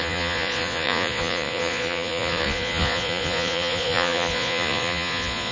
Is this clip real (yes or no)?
no